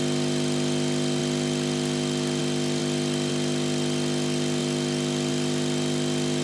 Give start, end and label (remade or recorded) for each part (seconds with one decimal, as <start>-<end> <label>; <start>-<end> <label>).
0.0-6.4 recorded